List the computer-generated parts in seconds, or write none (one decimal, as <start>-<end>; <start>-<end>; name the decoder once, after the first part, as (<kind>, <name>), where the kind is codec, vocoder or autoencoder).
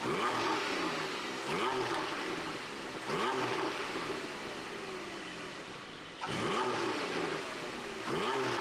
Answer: 5.1-7.7 (vocoder, BigVGAN v2)